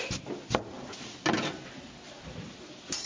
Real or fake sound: real